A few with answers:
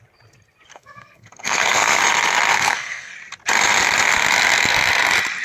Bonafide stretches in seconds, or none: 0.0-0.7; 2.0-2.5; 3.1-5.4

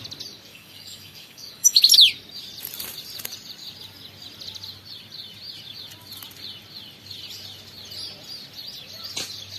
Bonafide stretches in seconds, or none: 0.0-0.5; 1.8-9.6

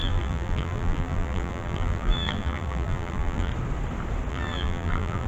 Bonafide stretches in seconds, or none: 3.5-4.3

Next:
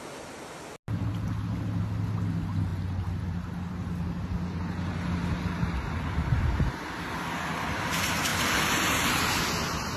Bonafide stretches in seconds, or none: 0.0-10.0

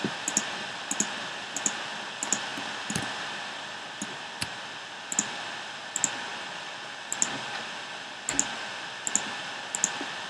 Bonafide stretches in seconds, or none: 0.0-10.3

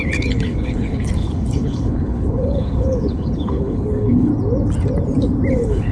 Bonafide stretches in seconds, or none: 4.3-5.5

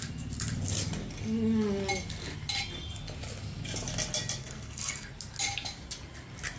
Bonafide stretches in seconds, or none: 0.0-4.4; 5.1-6.6

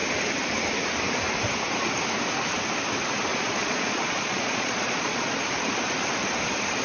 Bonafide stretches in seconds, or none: 0.0-3.3; 5.3-6.8